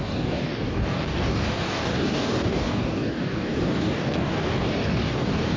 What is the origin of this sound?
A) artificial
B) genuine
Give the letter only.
A